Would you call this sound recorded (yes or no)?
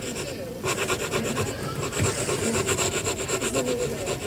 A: yes